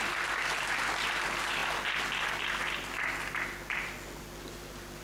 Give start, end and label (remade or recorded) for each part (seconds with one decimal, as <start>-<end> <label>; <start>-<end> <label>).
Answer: 0.0-1.6 remade; 1.6-4.2 recorded; 4.2-5.0 remade